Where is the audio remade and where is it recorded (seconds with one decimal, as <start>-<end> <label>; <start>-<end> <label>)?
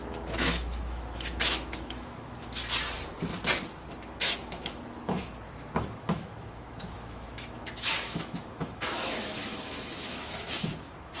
0.0-2.6 remade; 2.6-4.0 recorded; 4.0-11.2 remade